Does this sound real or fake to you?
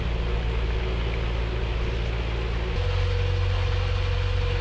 real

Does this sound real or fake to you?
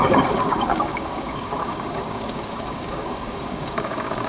fake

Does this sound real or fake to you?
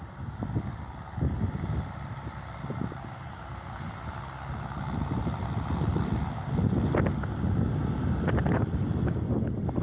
real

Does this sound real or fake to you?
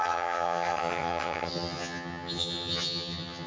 fake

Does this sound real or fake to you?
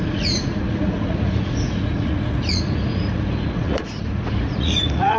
fake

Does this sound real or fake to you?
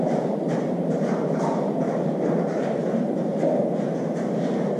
fake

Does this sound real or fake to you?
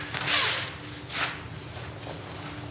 real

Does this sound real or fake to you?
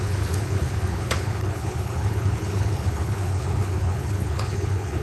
fake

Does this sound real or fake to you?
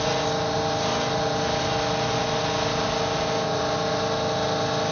real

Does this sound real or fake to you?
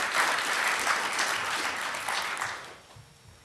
real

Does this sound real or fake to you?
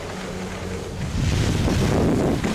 real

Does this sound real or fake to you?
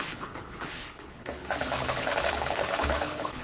fake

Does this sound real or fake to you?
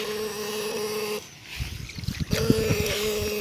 real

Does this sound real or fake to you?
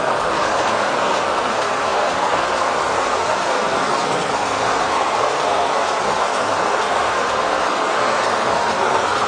fake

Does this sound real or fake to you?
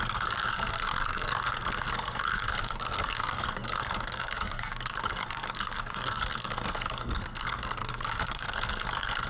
fake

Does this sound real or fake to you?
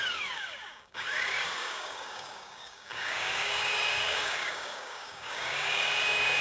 fake